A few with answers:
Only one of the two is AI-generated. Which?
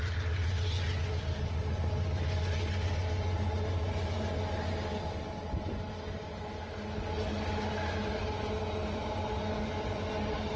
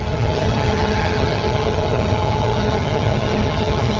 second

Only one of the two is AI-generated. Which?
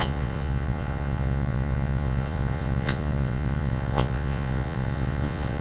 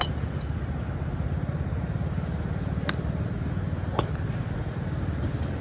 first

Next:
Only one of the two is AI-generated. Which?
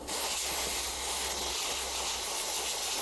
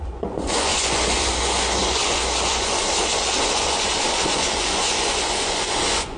second